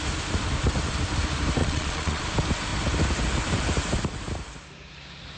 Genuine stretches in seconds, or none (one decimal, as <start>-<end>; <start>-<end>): 0.0-1.6; 2.2-5.4